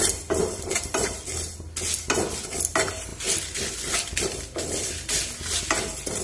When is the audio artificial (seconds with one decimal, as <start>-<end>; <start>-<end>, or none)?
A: none